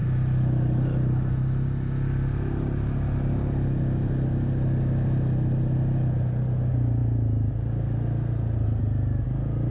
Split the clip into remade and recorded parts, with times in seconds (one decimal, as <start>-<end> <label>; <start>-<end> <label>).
0.0-9.7 recorded